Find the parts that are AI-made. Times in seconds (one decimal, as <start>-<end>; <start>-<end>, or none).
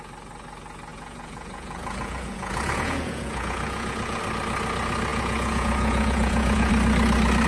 0.9-4.2; 5.1-6.7